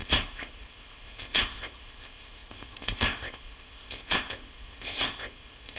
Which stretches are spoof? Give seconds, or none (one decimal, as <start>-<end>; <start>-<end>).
0.0-5.8